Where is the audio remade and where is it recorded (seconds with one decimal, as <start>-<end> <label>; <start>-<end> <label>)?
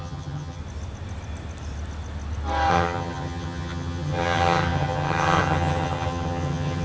0.0-0.6 remade; 0.6-2.7 recorded; 2.7-6.8 remade